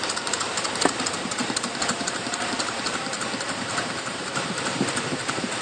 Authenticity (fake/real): fake